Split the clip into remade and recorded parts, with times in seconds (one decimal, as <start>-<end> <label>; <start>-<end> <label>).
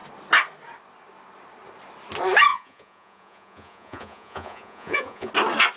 0.0-2.5 recorded; 2.5-5.3 remade; 5.3-5.8 recorded